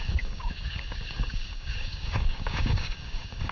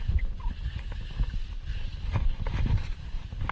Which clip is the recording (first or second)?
second